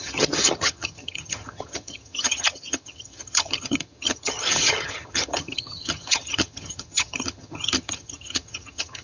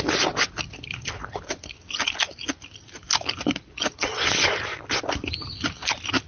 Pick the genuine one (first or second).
second